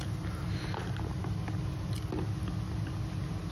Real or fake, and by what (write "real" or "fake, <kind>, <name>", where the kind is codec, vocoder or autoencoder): real